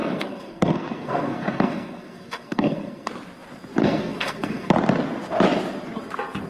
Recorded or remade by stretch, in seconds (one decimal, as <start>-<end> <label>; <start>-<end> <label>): 0.0-3.1 remade; 3.1-3.8 recorded; 3.8-4.7 remade; 4.7-6.5 recorded